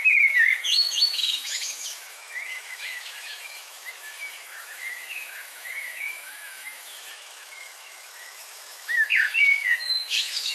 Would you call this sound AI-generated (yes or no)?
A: yes